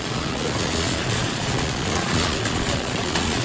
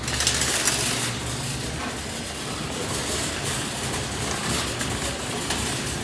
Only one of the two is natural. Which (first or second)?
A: second